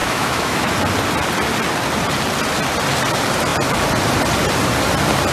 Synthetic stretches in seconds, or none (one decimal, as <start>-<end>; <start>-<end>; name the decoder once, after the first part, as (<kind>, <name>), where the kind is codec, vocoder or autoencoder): 0.0-0.7 (autoencoder, DAC-VAE)

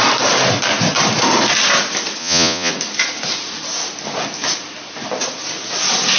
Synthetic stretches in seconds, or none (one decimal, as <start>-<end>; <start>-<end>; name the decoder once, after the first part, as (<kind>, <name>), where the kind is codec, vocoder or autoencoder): 2.2-2.7 (vocoder, Vocos)